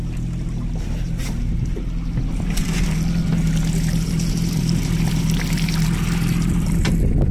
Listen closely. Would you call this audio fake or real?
real